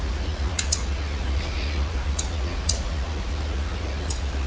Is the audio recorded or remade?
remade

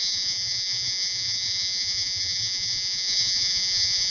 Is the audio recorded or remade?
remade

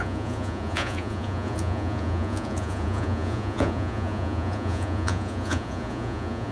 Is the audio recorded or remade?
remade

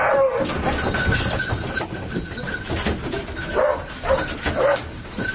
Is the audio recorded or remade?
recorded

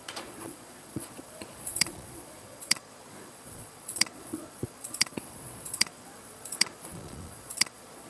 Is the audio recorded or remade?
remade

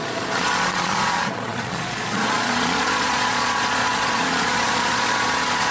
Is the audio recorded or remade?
remade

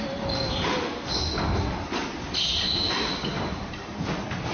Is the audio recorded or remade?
recorded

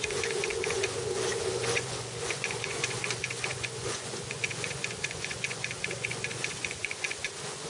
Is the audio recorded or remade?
remade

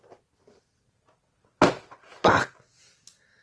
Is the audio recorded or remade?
recorded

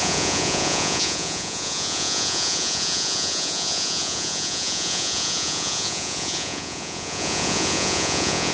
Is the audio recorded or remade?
remade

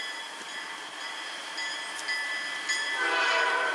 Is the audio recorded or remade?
recorded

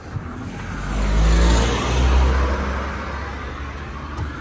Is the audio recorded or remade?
recorded